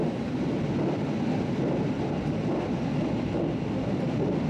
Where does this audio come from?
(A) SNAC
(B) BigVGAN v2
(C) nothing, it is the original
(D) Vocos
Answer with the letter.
C